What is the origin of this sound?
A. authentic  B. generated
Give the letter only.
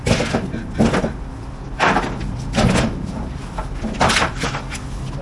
A